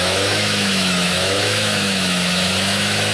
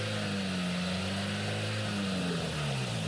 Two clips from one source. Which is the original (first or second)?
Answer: second